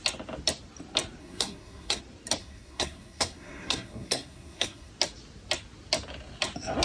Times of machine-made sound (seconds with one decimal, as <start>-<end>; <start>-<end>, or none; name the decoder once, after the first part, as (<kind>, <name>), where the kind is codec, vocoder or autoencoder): 1.2-2.0 (codec, SNAC); 2.4-4.9